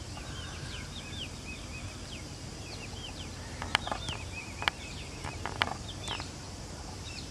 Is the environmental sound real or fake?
fake